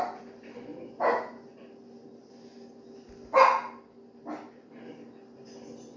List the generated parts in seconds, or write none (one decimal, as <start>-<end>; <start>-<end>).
none